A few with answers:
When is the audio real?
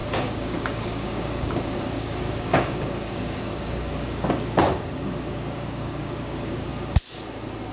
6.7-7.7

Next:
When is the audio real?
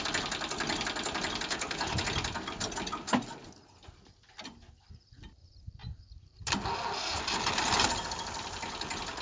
0.0-1.5; 2.0-9.2